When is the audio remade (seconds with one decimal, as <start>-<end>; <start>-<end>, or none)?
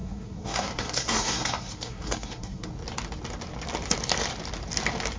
0.0-2.7